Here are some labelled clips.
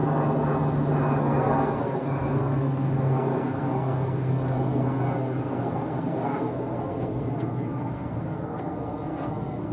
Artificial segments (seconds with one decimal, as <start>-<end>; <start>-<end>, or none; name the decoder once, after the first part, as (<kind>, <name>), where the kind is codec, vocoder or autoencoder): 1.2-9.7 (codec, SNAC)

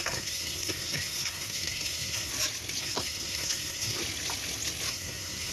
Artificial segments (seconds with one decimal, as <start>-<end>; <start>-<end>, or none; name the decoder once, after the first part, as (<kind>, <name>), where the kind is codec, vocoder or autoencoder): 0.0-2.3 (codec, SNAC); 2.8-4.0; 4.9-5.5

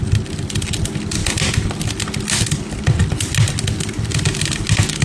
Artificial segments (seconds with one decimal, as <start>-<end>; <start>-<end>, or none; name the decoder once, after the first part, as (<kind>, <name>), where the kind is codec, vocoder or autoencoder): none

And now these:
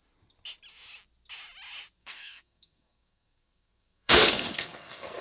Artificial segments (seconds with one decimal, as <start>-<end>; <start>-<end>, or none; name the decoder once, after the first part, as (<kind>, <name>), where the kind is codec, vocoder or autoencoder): 2.0-5.2 (codec, SNAC)

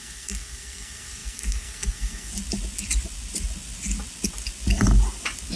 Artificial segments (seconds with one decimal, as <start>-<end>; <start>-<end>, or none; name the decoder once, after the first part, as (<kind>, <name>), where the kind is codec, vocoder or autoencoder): 0.0-2.3 (codec, SNAC)

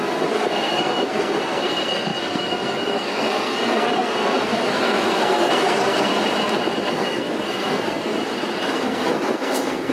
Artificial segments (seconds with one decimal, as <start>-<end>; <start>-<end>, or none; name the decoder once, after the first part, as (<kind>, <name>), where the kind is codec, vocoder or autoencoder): 0.0-6.1 (codec, SNAC); 6.9-8.1; 8.7-9.9